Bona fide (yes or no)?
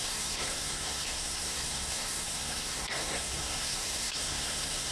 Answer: no